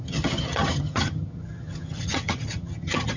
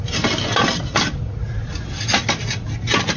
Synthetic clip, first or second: first